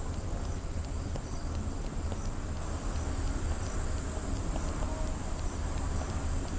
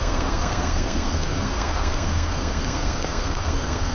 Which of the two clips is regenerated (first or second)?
second